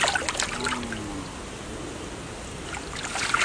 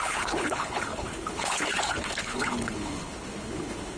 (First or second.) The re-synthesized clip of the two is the second